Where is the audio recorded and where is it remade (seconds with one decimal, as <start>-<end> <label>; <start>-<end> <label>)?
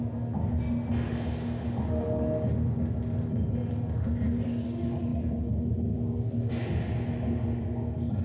0.0-8.2 recorded